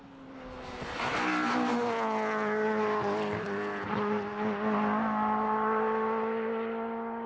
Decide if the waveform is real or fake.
real